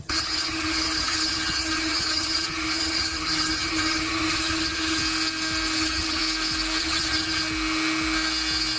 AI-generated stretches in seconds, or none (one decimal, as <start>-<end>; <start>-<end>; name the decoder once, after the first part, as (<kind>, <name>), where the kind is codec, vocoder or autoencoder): 0.0-5.0 (vocoder, HiFi-GAN); 5.8-6.2; 6.8-7.4